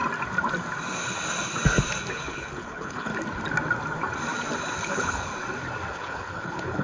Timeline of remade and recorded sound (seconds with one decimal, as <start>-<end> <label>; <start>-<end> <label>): 0.0-2.1 recorded; 2.1-3.1 remade; 3.1-4.8 recorded; 4.8-5.3 remade; 5.3-5.9 recorded; 5.9-6.8 remade